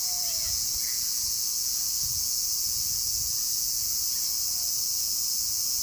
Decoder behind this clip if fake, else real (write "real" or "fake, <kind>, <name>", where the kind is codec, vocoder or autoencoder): fake, vocoder, Vocos